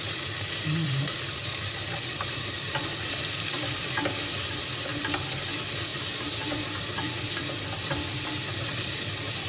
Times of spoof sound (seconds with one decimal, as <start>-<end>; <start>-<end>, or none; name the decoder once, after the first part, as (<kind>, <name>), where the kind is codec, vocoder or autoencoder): 0.0-9.5 (vocoder, BigVGAN v2)